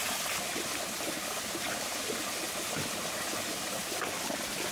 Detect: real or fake real